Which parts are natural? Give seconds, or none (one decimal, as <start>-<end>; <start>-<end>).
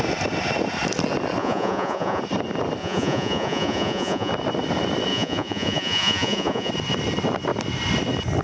0.0-1.4; 2.2-2.8; 4.3-5.1; 6.7-8.4